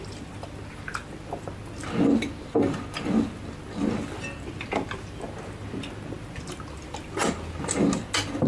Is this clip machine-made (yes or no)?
no